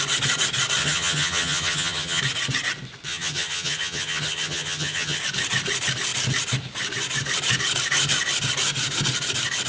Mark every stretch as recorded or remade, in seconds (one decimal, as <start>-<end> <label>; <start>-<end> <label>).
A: 0.0-0.8 recorded; 0.8-2.2 remade; 2.2-3.1 recorded; 3.1-5.2 remade; 5.2-9.7 recorded